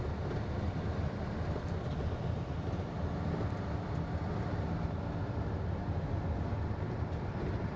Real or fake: fake